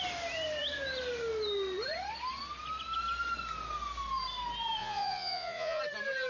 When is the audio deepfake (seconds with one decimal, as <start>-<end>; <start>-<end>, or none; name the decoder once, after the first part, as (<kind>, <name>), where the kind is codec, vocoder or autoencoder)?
4.8-5.8 (vocoder, Vocos)